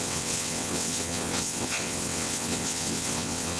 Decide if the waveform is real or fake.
fake